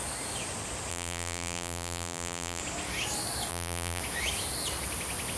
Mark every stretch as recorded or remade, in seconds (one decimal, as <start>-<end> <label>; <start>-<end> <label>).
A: 0.0-0.9 recorded; 0.9-2.6 remade; 2.6-3.5 recorded; 3.5-4.0 remade; 4.0-5.4 recorded